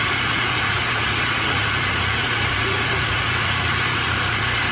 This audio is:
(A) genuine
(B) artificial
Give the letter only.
B